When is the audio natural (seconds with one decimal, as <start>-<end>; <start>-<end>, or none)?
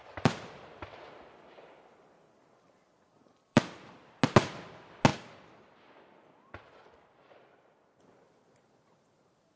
3.6-9.6